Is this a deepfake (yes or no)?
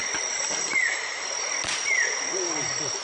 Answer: no